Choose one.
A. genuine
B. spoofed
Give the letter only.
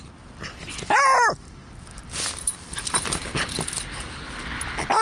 A